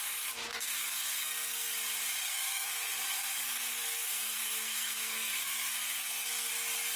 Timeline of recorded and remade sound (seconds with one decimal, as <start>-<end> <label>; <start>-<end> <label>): 0.0-0.5 recorded; 0.5-1.7 remade; 1.7-2.3 recorded; 2.3-6.5 remade; 6.5-7.0 recorded